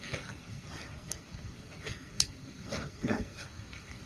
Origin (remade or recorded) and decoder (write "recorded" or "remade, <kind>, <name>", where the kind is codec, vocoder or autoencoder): remade, codec, SNAC